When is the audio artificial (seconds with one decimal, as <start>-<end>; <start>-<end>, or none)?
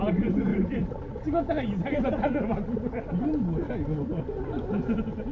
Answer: none